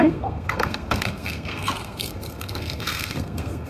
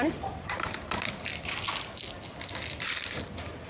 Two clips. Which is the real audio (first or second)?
second